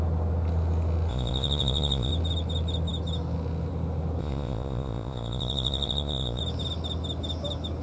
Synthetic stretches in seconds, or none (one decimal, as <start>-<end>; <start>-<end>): 1.1-2.1; 4.2-6.4